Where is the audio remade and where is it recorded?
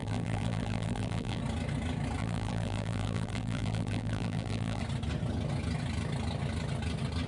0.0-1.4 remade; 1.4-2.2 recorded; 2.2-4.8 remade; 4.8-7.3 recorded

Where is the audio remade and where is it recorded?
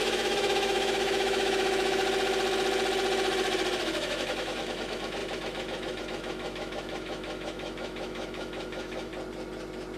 0.0-2.0 remade; 2.0-3.8 recorded; 3.8-9.1 remade; 9.1-10.0 recorded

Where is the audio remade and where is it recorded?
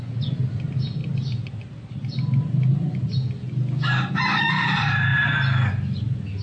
0.0-6.4 recorded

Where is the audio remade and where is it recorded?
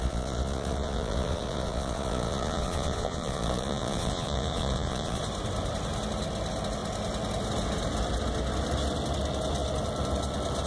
0.0-5.2 remade; 5.2-10.7 recorded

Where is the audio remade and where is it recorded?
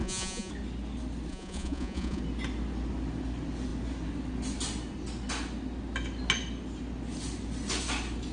0.0-0.5 remade; 0.5-1.3 recorded; 1.3-2.2 remade; 2.2-8.3 recorded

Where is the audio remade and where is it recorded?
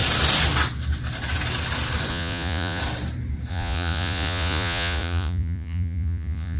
0.0-2.1 recorded; 2.1-2.8 remade; 2.8-3.5 recorded; 3.5-6.6 remade